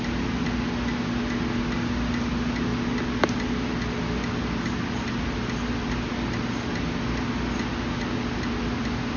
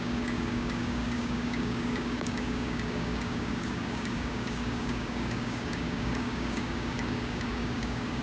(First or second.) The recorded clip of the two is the first